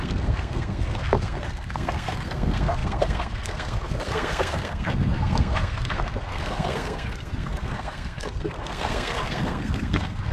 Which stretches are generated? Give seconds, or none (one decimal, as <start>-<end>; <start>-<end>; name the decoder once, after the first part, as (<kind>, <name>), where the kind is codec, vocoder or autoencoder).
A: 0.0-10.3 (codec, SNAC)